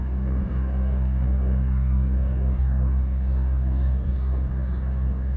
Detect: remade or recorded remade